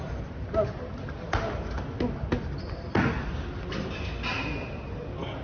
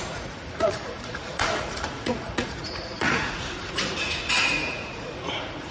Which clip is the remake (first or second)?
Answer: second